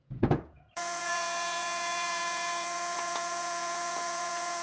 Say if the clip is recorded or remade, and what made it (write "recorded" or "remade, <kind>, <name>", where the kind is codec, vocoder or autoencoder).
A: remade, vocoder, Vocos